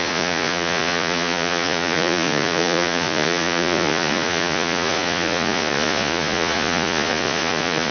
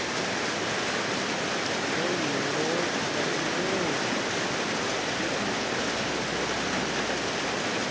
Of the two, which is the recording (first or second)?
second